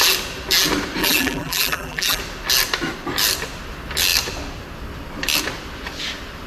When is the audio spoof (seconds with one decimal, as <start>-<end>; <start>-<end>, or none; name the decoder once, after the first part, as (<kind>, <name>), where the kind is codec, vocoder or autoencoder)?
1.0-2.2 (vocoder, BigVGAN v2)